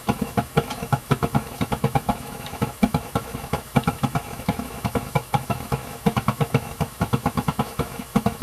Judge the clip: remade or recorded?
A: remade